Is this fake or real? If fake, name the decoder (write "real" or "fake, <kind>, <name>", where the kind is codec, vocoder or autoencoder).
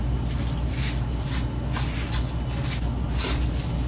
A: real